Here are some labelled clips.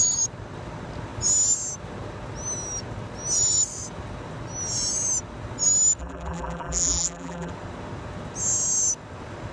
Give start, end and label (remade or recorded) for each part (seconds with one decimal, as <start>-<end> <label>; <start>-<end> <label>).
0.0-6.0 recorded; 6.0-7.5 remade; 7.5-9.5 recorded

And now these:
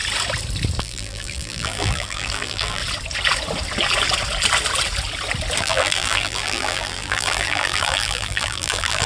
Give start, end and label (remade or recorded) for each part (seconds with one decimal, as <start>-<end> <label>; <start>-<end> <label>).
0.0-0.8 recorded; 0.8-2.8 remade; 2.8-5.6 recorded; 5.6-9.1 remade

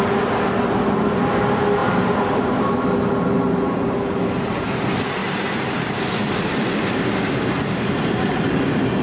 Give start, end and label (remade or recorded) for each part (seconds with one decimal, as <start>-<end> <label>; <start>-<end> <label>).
0.0-1.8 recorded; 1.8-2.5 remade; 2.5-5.2 recorded; 5.2-8.5 remade; 8.5-9.0 recorded

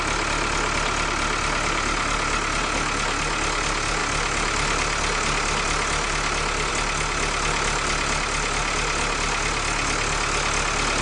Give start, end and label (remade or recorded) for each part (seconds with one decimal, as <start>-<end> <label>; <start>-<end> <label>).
0.0-11.0 recorded

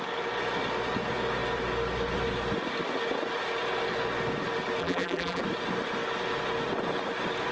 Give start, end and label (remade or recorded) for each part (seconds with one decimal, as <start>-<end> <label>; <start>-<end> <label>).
0.0-4.8 recorded; 4.8-5.4 remade; 5.4-7.5 recorded